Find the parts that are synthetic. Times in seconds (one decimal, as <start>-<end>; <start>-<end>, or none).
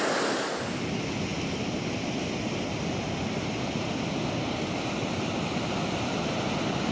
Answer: none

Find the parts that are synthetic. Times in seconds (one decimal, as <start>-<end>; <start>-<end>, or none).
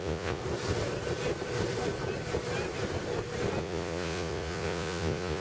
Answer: 0.0-0.4; 3.6-5.4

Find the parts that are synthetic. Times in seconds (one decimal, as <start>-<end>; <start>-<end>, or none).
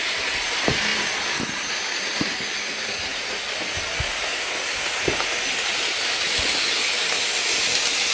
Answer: none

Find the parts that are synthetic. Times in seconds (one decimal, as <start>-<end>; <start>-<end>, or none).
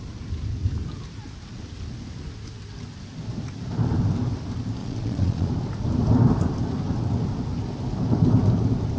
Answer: 4.8-5.5